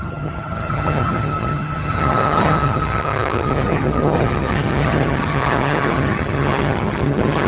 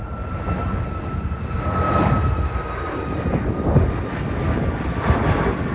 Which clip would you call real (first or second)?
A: second